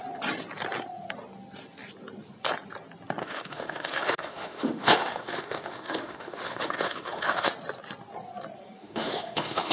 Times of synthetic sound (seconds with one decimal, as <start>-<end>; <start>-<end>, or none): 3.2-7.5; 8.8-9.7